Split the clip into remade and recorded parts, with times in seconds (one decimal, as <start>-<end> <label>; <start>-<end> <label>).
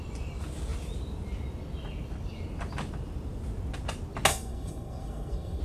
0.0-4.3 recorded; 4.3-5.6 remade